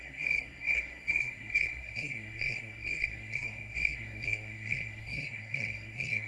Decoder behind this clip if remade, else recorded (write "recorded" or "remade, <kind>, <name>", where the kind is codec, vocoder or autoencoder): remade, codec, SNAC